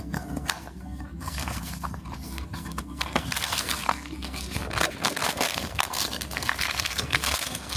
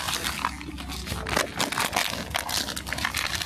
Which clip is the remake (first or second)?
first